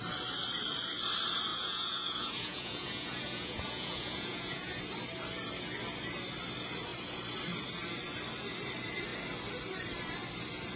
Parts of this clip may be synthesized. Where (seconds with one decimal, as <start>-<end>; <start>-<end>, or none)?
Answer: 1.5-4.8